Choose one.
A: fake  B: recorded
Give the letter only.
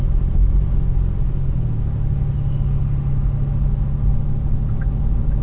B